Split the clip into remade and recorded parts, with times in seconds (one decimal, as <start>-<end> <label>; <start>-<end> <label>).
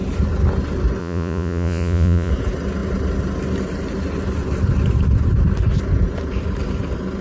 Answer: 0.0-1.0 recorded; 1.0-2.3 remade; 2.3-7.2 recorded